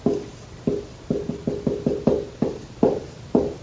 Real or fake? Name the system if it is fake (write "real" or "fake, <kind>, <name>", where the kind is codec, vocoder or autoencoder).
real